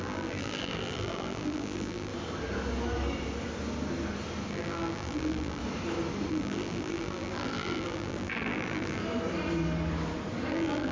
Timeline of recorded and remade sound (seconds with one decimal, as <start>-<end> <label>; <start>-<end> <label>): 0.0-2.1 remade; 2.1-4.5 recorded; 4.5-5.6 remade; 5.6-6.3 recorded; 6.3-9.0 remade; 9.0-10.5 recorded; 10.5-10.9 remade